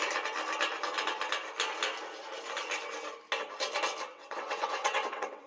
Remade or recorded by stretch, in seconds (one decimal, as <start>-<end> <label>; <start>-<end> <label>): 0.0-4.1 recorded; 4.1-5.5 remade